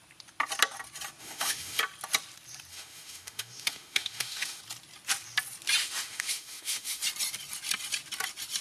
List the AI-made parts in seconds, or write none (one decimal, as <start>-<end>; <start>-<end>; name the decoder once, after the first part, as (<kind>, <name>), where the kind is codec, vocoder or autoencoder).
1.2-1.8 (autoencoder, DAC-VAE); 2.7-4.6; 5.8-7.0